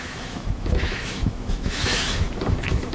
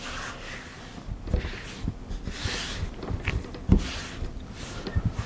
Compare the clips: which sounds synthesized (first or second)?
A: first